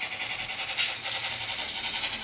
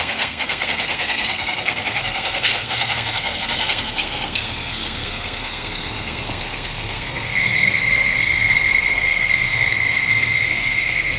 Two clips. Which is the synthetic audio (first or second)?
second